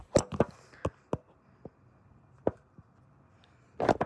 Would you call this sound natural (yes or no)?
yes